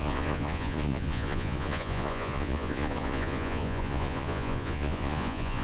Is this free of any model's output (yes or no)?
no